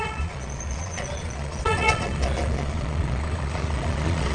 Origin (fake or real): fake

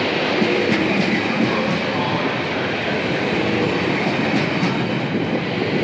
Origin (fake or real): real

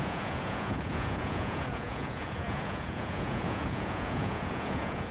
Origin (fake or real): fake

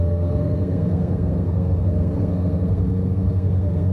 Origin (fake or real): fake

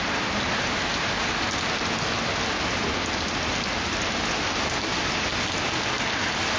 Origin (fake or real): real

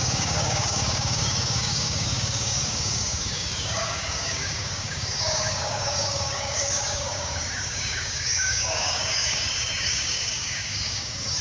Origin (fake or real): fake